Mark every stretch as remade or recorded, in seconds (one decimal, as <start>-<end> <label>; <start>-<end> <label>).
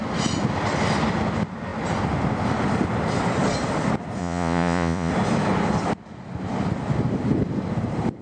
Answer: 0.0-4.2 recorded; 4.2-5.1 remade; 5.1-8.2 recorded